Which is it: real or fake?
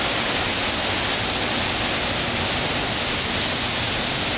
real